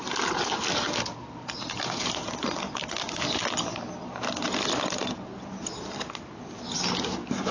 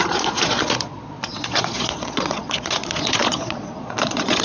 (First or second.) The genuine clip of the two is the first